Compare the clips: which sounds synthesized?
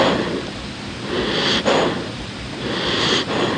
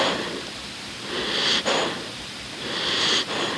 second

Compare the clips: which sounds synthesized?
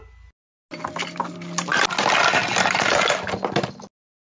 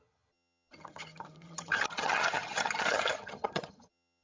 second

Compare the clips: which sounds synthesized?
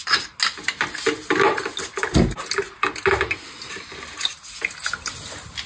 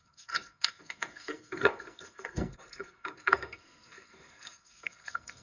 second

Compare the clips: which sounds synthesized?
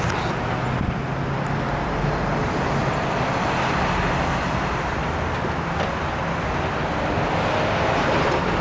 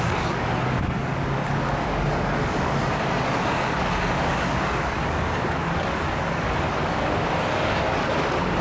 second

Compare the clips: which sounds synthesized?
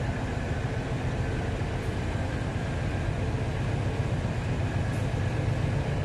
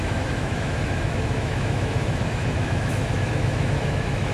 second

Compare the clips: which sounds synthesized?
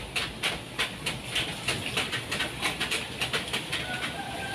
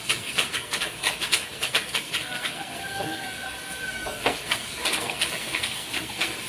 second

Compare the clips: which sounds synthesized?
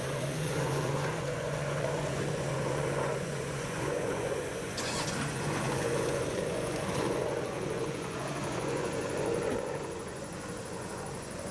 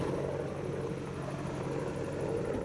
first